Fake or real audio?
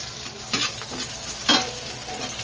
real